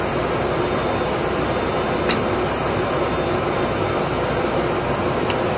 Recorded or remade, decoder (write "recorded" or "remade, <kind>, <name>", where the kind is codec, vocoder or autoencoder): recorded